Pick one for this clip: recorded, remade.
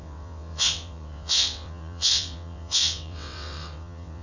remade